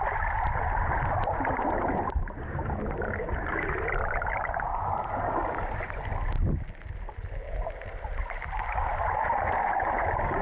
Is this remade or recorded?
recorded